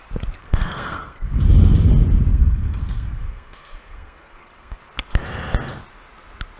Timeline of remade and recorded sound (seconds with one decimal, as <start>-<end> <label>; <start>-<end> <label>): 0.0-0.4 recorded; 0.4-1.4 remade; 1.4-2.3 recorded; 2.3-4.8 remade; 4.8-6.6 recorded